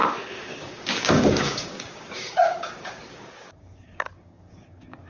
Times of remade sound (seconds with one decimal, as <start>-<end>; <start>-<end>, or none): 0.0-5.1